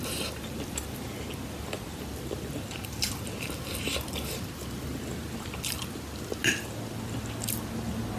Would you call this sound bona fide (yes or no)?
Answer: yes